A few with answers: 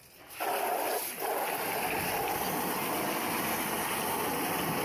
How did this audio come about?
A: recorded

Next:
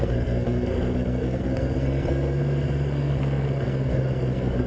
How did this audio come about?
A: remade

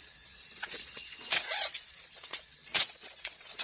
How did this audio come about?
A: remade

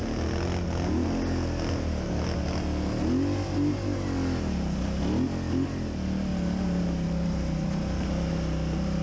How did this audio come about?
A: recorded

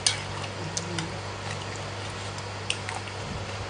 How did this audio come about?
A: recorded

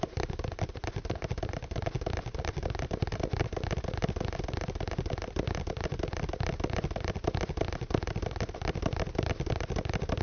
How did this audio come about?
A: recorded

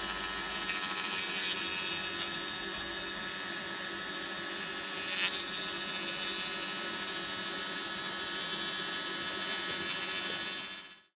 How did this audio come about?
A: recorded